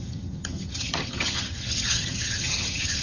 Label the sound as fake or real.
fake